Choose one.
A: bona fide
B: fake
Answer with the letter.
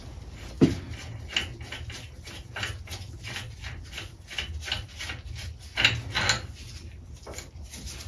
A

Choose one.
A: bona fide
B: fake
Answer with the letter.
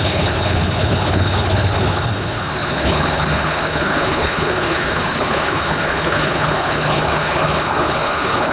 B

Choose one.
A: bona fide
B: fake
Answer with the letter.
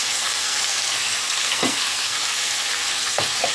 B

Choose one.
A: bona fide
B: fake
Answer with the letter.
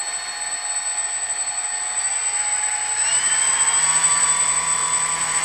B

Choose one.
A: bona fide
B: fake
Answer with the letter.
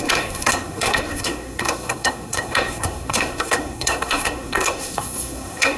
B